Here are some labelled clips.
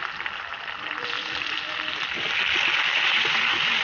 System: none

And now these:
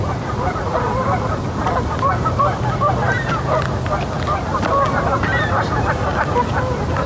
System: none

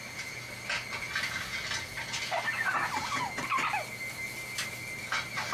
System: none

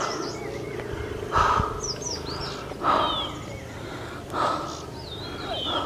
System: none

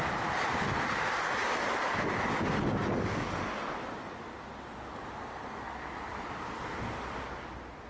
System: none